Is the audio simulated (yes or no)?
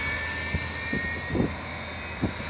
no